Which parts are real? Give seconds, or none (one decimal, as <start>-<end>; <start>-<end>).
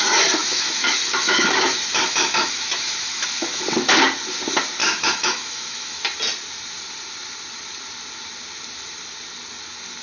0.0-0.4; 3.6-4.8; 6.0-10.0